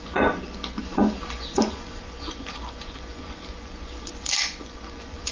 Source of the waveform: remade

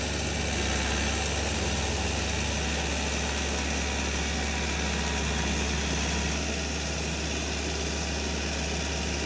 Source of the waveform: recorded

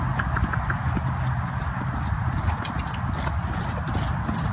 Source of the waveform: recorded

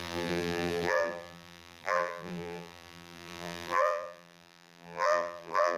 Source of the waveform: remade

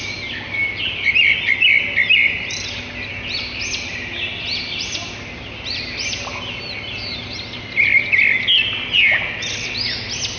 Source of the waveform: recorded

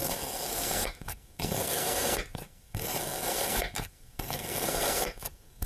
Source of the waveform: remade